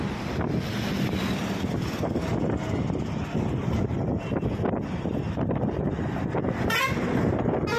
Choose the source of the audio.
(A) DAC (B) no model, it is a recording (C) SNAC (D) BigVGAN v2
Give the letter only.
B